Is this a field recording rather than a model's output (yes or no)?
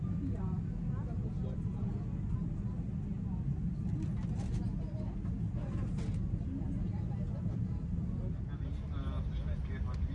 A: yes